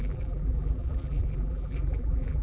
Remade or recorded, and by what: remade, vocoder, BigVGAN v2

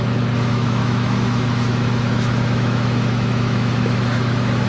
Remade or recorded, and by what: remade, autoencoder, DAC-VAE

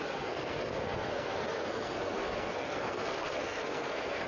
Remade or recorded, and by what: remade, codec, SNAC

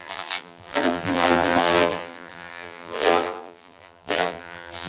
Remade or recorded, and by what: remade, vocoder, BigVGAN v2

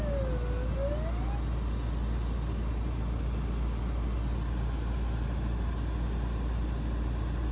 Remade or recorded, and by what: recorded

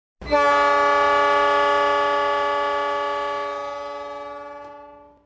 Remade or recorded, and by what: recorded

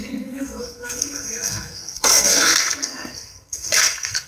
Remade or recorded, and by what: remade, codec, SNAC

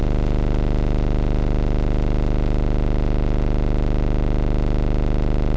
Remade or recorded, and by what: recorded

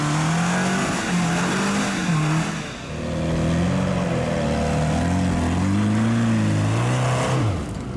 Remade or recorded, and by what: recorded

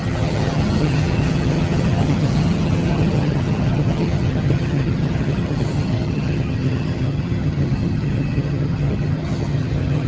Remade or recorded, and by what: remade, vocoder, HiFi-GAN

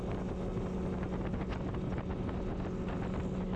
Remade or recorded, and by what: recorded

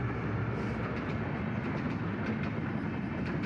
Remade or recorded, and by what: recorded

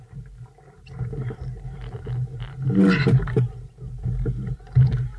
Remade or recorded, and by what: remade, vocoder, BigVGAN v2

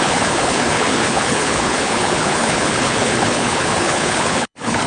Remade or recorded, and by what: remade, codec, HILCodec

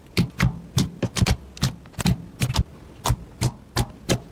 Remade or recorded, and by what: recorded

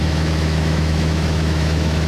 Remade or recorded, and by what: remade, autoencoder, DAC-VAE